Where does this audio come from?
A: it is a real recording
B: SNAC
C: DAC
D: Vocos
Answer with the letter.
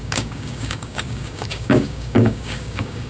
C